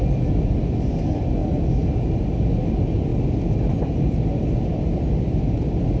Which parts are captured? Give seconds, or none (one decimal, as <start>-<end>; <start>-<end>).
0.0-6.0